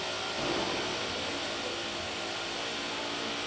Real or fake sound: real